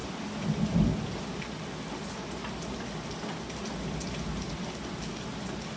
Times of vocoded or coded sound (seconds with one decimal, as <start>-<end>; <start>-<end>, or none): none